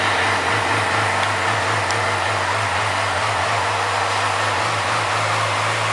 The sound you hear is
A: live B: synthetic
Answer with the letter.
A